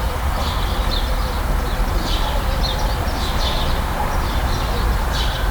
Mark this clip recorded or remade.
remade